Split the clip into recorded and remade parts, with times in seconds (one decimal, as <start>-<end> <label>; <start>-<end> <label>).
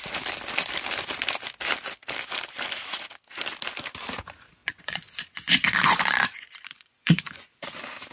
0.0-4.6 recorded; 4.6-7.5 remade; 7.5-8.1 recorded